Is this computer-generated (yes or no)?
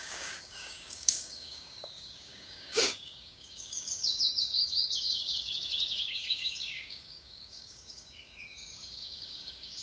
yes